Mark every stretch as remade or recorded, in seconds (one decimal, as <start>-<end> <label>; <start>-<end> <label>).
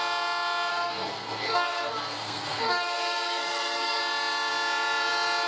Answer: 0.0-0.7 recorded; 0.7-4.0 remade; 4.0-5.5 recorded